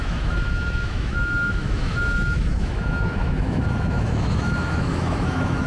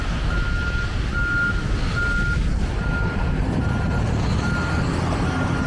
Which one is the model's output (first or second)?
first